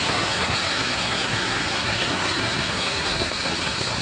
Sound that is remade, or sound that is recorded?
remade